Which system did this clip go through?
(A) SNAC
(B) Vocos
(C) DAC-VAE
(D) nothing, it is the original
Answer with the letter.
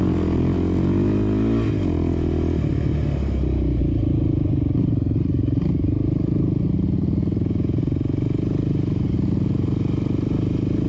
D